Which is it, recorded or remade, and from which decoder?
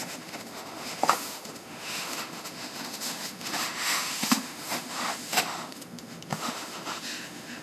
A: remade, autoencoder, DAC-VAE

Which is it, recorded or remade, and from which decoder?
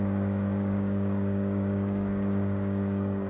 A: remade, codec, DAC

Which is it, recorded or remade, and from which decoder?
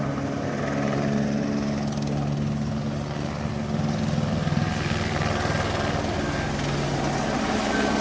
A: recorded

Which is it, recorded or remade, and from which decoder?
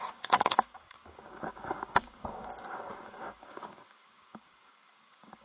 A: remade, codec, DAC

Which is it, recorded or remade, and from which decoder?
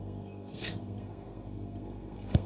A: remade, codec, SNAC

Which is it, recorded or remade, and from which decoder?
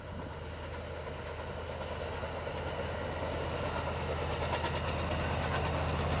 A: recorded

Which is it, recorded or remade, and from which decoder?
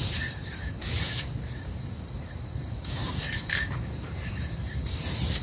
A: remade, vocoder, BigVGAN v2